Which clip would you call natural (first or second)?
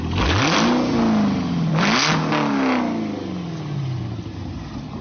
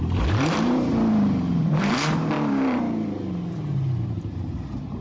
first